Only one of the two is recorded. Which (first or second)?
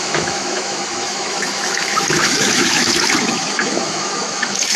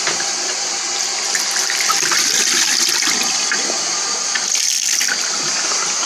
second